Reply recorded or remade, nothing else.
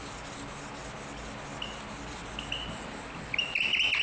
recorded